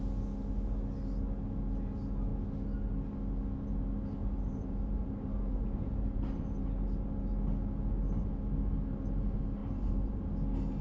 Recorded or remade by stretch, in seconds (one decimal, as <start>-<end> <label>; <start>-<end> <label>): 0.0-4.2 recorded; 4.2-6.4 remade; 6.4-9.6 recorded; 9.6-10.2 remade; 10.2-10.8 recorded

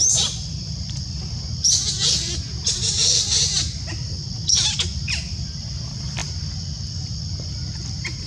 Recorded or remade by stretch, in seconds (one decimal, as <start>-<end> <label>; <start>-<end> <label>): 0.0-6.2 recorded; 6.2-7.3 remade; 7.3-8.3 recorded

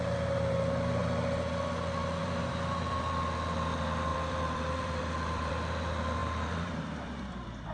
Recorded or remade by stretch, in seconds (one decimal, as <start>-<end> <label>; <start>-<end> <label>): 0.0-2.2 recorded; 2.2-3.0 remade; 3.0-4.1 recorded; 4.1-5.5 remade; 5.5-6.2 recorded; 6.2-7.7 remade

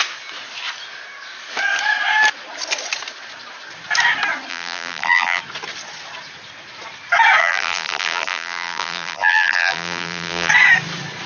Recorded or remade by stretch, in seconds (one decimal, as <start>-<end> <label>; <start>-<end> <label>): 0.0-4.5 recorded; 4.5-5.4 remade; 5.4-7.4 recorded; 7.4-10.5 remade; 10.5-11.3 recorded